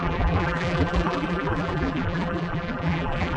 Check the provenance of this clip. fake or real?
fake